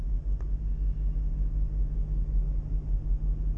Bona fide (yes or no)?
yes